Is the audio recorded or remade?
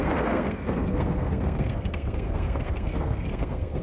remade